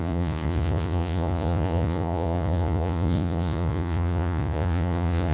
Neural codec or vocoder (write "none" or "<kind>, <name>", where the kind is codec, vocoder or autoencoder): vocoder, Vocos